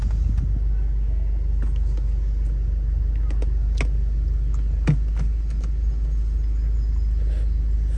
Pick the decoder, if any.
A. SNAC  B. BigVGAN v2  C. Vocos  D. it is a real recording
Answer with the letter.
D